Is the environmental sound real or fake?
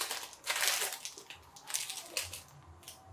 real